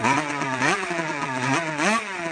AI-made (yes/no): yes